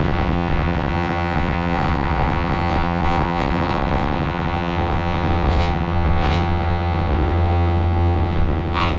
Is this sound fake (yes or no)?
yes